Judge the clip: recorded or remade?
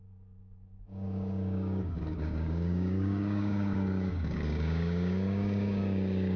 remade